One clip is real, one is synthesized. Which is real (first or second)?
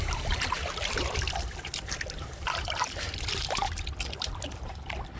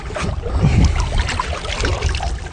second